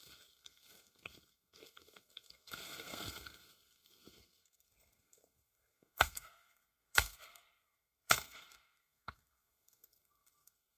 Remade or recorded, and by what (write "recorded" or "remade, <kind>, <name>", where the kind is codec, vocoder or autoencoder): remade, codec, SNAC